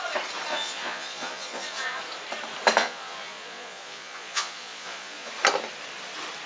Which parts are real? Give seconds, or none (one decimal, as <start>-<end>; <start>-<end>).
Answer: 0.0-0.5; 2.0-2.8; 5.3-6.5

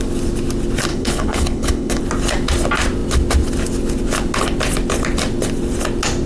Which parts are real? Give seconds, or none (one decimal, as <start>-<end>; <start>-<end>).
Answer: 0.0-0.9; 2.0-6.3